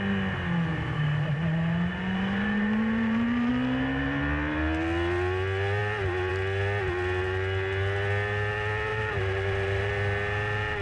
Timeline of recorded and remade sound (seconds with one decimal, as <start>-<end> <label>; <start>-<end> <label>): 0.0-0.7 recorded; 0.7-3.5 remade; 3.5-8.9 recorded; 8.9-9.9 remade; 9.9-10.8 recorded